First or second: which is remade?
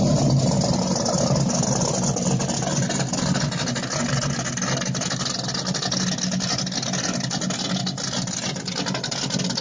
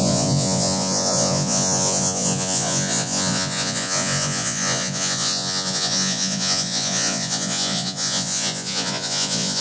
second